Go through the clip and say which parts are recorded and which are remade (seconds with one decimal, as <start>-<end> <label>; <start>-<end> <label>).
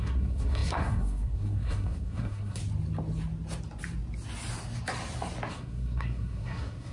0.0-2.6 remade; 2.6-5.5 recorded; 5.5-6.9 remade